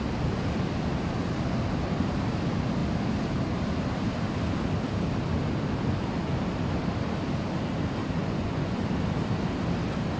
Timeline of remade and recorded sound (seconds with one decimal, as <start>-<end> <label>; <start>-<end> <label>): 0.0-8.2 recorded; 8.2-8.8 remade; 8.8-10.2 recorded